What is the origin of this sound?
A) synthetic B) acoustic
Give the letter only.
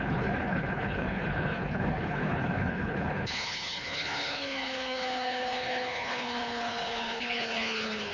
A